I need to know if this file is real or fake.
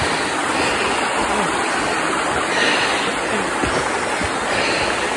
real